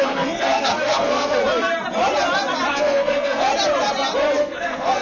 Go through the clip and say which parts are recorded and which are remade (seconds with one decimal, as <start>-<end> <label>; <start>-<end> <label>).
0.0-1.4 remade; 1.4-2.7 recorded; 2.7-3.5 remade; 3.5-4.4 recorded; 4.4-5.0 remade